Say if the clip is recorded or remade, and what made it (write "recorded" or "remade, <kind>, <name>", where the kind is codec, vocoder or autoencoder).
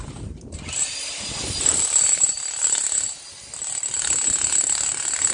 recorded